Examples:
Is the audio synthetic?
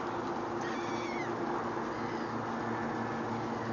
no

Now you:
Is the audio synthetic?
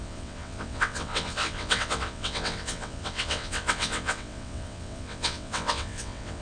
yes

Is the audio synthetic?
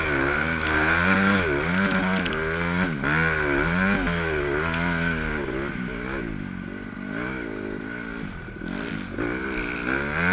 no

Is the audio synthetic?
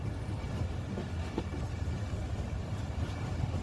no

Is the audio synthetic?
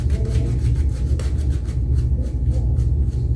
no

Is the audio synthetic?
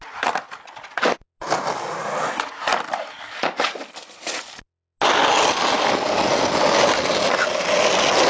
no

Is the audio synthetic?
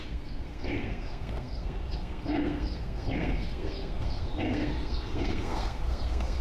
yes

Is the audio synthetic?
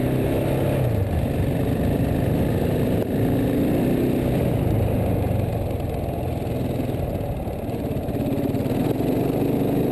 no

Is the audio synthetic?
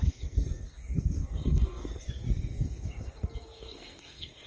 yes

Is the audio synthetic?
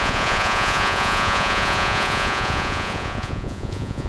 yes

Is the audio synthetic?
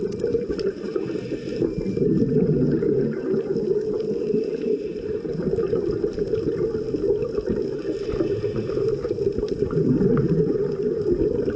yes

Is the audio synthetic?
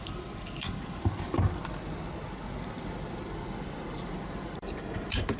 no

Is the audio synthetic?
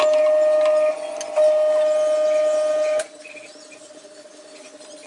no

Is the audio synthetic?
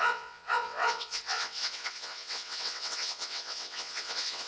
yes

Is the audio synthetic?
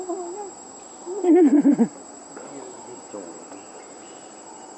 no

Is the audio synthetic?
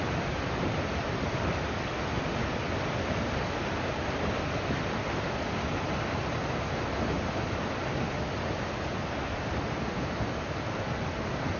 no